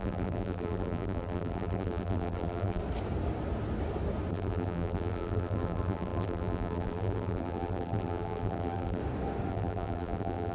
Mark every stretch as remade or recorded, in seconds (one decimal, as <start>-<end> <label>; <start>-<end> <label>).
0.0-2.8 remade; 2.8-4.3 recorded; 4.3-9.0 remade; 9.0-9.5 recorded; 9.5-10.5 remade